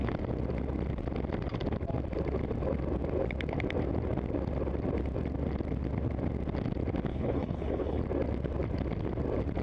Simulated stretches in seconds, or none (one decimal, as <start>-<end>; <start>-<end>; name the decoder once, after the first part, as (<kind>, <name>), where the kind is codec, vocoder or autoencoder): 7.1-8.0 (codec, HILCodec)